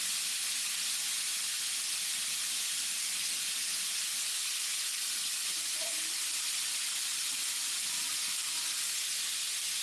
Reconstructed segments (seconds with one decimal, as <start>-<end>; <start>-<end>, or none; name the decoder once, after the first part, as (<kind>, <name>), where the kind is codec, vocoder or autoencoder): none